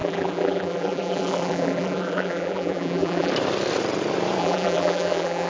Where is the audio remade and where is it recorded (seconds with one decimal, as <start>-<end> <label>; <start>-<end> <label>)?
0.0-3.3 remade; 3.3-4.4 recorded; 4.4-5.5 remade